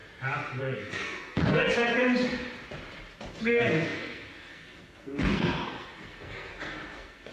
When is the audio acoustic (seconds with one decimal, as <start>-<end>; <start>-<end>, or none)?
0.0-0.6; 1.9-3.3